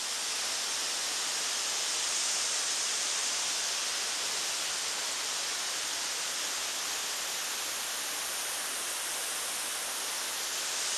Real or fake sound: real